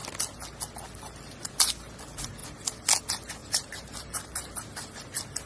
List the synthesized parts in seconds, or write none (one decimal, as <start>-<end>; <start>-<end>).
3.4-4.9